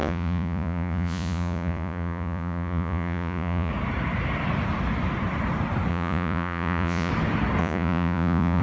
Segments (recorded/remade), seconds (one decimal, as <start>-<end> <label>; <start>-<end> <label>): 0.0-3.7 remade; 3.7-5.9 recorded; 5.9-7.1 remade; 7.1-7.6 recorded; 7.6-8.6 remade